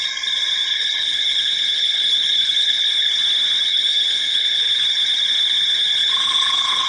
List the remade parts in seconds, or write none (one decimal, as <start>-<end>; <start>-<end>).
0.7-3.1; 3.7-4.6; 6.0-6.9